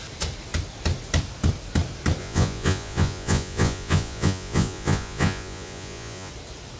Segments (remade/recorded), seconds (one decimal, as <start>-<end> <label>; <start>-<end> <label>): 0.0-2.2 recorded; 2.2-6.3 remade; 6.3-6.8 recorded